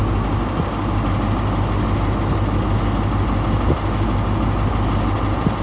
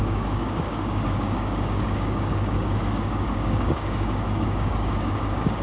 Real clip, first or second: first